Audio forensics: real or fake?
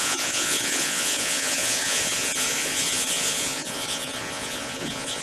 fake